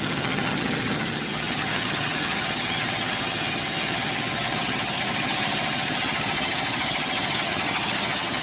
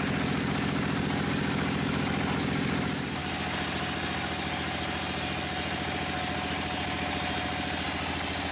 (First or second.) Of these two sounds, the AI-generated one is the first